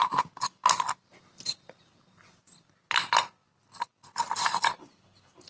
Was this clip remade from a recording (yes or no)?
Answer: no